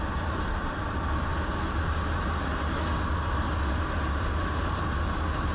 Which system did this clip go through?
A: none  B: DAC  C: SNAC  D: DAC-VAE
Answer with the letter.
A